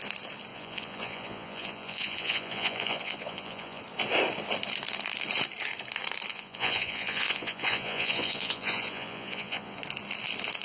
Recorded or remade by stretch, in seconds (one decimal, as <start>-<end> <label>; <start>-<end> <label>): 0.0-0.5 recorded; 0.5-3.8 remade; 3.8-6.3 recorded; 6.3-9.8 remade; 9.8-10.6 recorded